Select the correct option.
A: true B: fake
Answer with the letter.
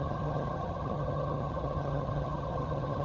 B